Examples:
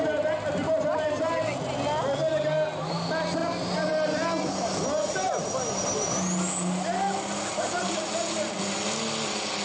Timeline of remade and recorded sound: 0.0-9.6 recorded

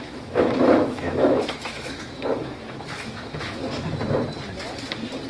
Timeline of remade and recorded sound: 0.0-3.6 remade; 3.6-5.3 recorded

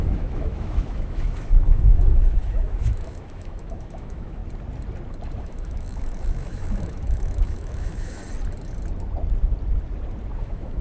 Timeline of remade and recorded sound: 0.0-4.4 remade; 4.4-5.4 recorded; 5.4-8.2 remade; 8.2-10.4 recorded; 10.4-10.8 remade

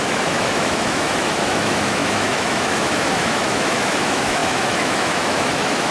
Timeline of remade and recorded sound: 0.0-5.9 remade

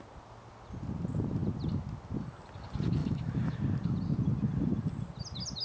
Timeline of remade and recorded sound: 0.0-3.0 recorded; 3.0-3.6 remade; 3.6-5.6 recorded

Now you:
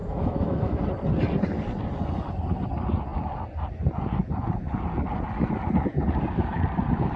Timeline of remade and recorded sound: 0.0-0.8 remade; 0.8-7.2 recorded

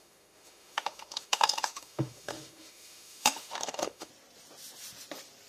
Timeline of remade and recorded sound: 0.0-4.1 remade; 4.1-5.5 recorded

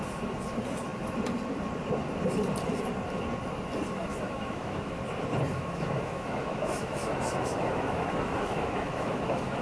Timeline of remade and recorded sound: 0.0-4.1 recorded; 4.1-5.0 remade; 5.0-5.5 recorded; 5.5-9.6 remade